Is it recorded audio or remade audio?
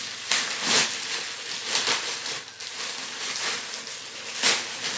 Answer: recorded